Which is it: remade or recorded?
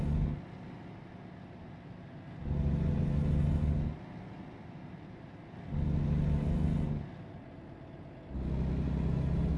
recorded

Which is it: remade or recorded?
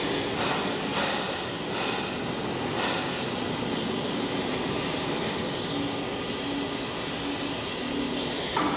recorded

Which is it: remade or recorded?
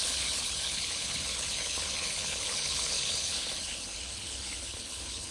remade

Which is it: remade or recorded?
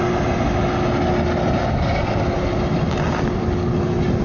recorded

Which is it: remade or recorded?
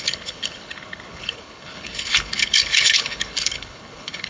remade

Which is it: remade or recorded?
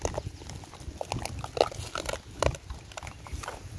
recorded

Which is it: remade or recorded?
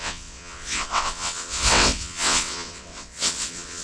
remade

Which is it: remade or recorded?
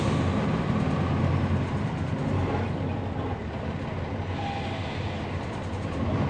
recorded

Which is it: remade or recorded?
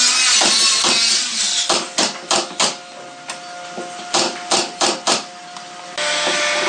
recorded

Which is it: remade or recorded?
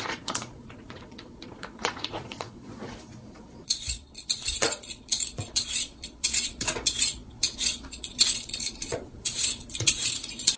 remade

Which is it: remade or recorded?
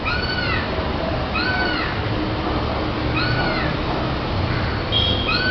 recorded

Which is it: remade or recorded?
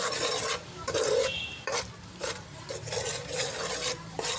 remade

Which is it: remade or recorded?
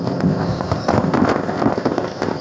remade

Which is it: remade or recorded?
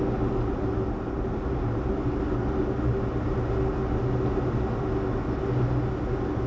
recorded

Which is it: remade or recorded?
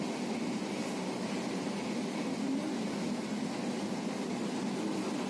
recorded